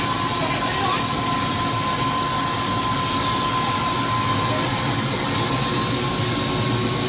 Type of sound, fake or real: real